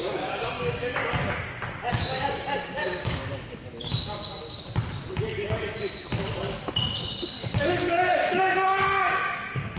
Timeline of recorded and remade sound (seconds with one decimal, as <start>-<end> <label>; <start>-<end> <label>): 0.0-1.0 remade; 1.0-1.9 recorded; 1.9-3.2 remade; 3.2-7.6 recorded; 7.6-9.8 remade

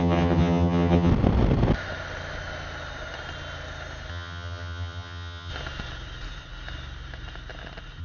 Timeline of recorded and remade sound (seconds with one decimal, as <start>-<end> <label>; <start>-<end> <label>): 0.0-1.1 remade; 1.1-4.1 recorded; 4.1-5.5 remade; 5.5-8.0 recorded